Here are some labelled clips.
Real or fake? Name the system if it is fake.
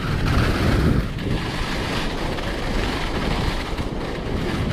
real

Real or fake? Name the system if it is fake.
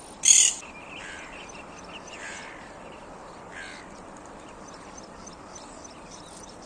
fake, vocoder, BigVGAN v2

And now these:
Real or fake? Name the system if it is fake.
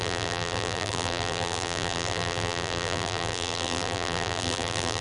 fake, vocoder, BigVGAN v2